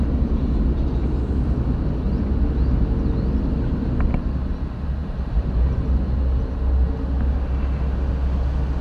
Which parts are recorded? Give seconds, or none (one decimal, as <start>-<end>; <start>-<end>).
0.0-5.0; 5.5-8.8